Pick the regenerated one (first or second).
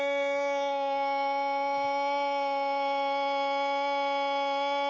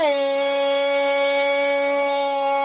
second